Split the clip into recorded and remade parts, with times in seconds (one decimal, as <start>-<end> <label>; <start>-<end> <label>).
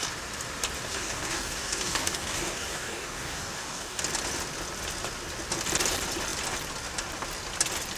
0.0-0.9 recorded; 0.9-4.0 remade; 4.0-8.0 recorded